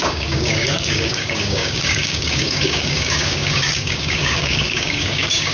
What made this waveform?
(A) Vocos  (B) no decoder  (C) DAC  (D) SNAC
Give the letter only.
C